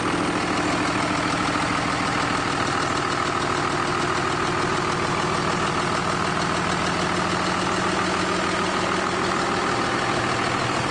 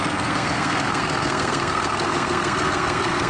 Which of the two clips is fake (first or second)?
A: second